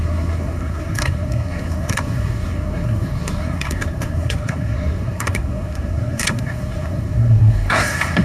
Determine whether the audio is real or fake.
fake